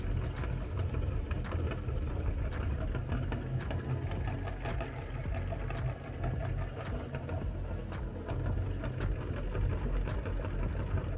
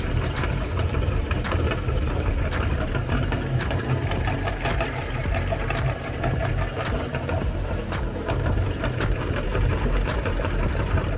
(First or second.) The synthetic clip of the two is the second